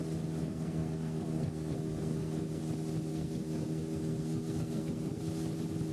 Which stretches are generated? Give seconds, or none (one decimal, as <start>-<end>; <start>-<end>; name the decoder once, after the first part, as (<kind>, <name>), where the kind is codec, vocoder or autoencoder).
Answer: 0.4-2.6 (codec, SNAC); 3.1-5.2